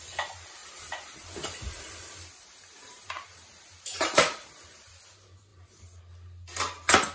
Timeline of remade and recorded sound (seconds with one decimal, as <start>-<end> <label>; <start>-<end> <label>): 0.0-0.6 recorded; 0.6-4.9 remade; 4.9-5.5 recorded; 5.5-6.0 remade; 6.0-7.1 recorded